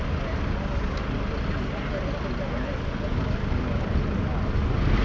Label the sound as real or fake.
real